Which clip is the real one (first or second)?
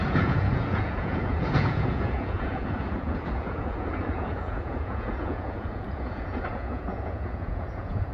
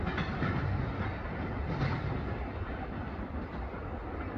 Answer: second